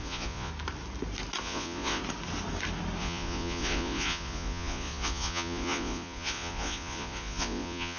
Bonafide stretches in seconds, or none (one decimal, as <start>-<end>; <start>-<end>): 0.5-1.4; 2.0-3.0